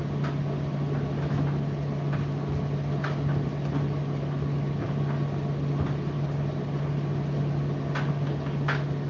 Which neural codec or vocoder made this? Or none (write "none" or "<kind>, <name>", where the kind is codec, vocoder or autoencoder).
none